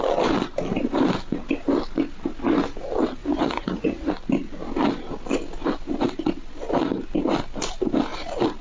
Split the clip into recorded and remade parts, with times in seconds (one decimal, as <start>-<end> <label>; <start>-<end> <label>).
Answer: 0.0-3.2 recorded; 3.2-4.1 remade; 4.1-8.6 recorded